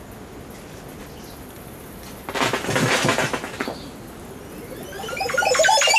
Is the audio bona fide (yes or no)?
yes